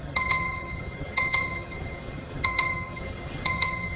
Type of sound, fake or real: fake